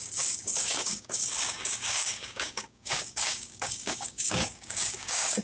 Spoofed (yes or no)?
yes